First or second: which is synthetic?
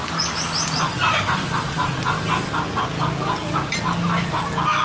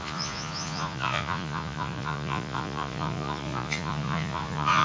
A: second